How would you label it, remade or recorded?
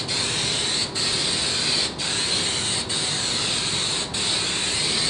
recorded